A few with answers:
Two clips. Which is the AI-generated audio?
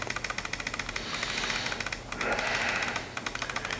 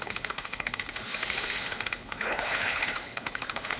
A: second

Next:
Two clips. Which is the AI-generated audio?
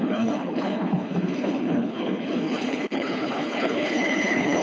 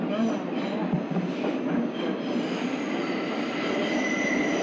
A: first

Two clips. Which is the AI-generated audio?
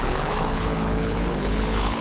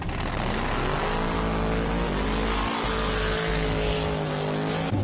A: first